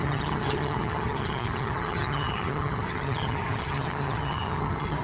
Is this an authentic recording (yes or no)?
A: no